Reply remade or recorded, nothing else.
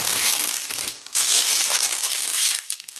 remade